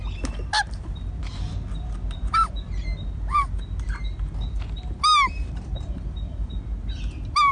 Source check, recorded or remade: recorded